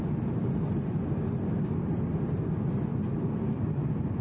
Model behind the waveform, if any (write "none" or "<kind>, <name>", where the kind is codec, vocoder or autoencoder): none